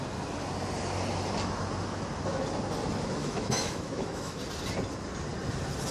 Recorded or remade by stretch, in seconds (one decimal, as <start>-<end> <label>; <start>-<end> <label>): 0.0-3.2 recorded; 3.2-4.4 remade; 4.4-5.9 recorded